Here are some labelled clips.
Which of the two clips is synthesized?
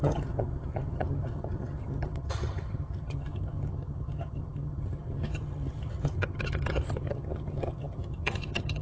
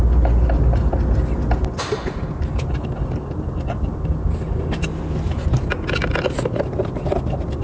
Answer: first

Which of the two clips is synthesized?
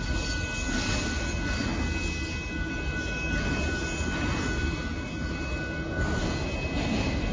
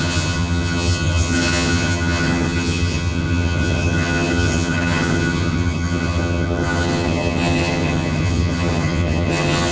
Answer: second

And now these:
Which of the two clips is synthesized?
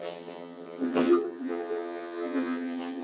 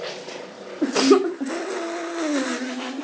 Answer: first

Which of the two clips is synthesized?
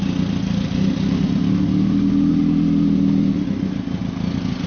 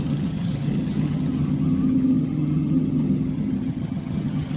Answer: second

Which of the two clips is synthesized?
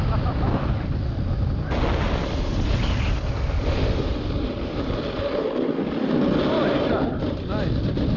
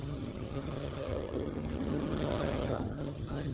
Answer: second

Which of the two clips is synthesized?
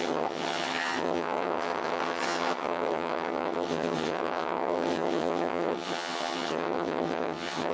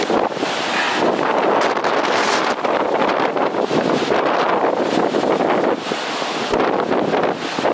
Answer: first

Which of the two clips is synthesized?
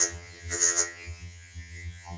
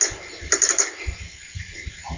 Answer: first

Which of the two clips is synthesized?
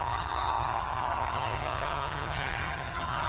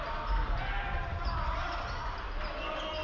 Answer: first